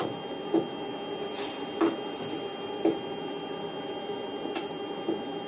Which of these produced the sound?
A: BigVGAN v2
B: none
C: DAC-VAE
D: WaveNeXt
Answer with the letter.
B